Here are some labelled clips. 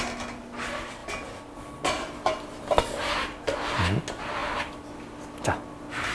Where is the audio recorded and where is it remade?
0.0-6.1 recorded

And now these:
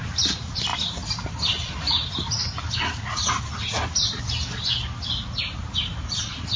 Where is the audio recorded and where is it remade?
0.0-6.6 recorded

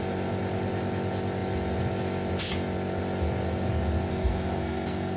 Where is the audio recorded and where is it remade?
0.0-4.1 recorded; 4.1-5.2 remade

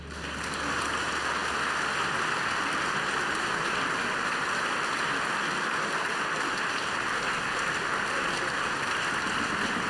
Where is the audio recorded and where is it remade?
0.0-9.9 recorded

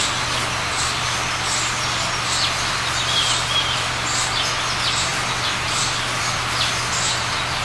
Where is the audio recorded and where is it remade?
0.0-7.6 recorded